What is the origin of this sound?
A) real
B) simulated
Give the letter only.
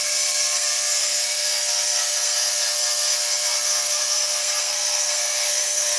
B